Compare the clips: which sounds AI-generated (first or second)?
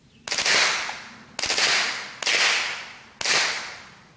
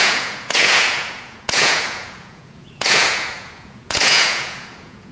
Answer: second